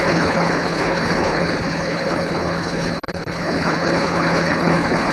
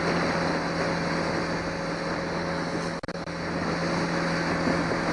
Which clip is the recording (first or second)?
second